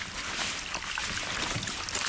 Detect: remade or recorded recorded